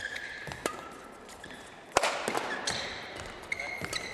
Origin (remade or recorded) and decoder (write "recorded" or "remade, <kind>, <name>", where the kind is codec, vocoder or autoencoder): recorded